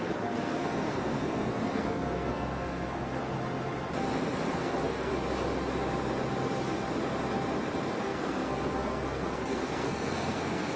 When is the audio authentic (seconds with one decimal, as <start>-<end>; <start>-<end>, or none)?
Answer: 3.2-4.5; 5.1-8.0

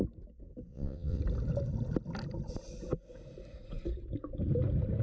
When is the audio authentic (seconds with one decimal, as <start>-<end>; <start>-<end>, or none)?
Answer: 0.0-0.7; 1.2-5.0

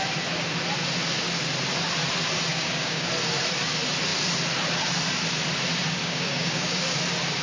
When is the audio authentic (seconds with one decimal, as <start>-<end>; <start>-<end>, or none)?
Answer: 0.0-2.5; 3.1-6.0; 6.8-7.4